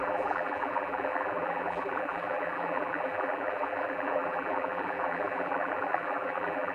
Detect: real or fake fake